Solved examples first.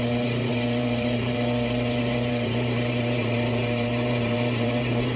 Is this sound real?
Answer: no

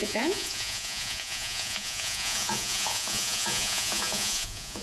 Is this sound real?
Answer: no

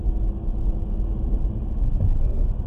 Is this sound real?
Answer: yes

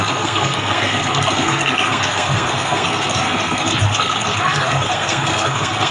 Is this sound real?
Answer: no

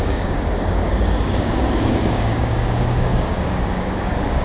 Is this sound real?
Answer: no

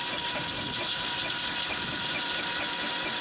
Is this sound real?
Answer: yes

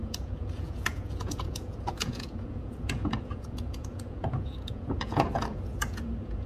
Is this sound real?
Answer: no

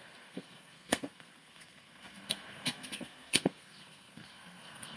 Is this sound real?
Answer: no